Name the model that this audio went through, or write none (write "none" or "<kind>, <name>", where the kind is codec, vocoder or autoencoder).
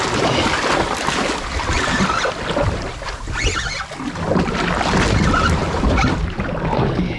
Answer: none